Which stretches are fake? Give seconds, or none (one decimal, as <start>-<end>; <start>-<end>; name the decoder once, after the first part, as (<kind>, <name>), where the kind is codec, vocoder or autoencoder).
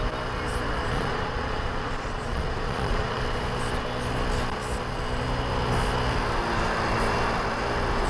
0.8-3.2 (vocoder, Vocos)